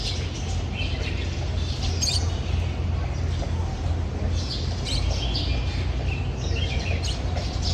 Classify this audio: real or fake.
real